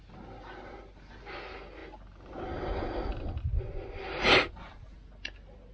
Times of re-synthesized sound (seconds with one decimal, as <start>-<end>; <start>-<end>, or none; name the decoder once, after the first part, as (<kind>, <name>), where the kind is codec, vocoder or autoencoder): none